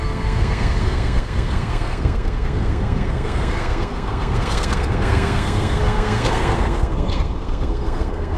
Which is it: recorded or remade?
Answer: remade